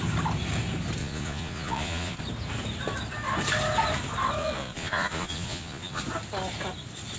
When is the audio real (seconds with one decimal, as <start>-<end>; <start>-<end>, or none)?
0.0-1.0; 2.2-4.4; 6.0-7.2